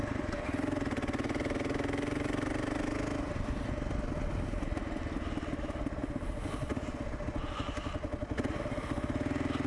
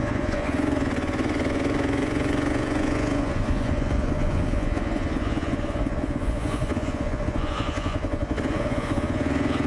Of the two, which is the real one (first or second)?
first